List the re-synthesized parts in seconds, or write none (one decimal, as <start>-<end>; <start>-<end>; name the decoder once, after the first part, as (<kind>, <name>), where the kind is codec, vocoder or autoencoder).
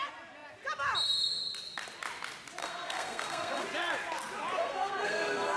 2.6-3.6 (codec, SNAC); 4.6-5.6